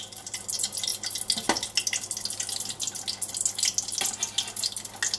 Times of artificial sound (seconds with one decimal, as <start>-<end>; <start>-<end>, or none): none